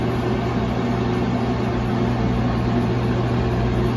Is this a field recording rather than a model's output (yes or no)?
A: yes